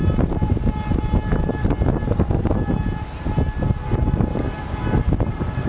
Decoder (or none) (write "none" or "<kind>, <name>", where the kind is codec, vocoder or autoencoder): none